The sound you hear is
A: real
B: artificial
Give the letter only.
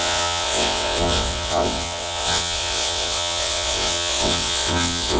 B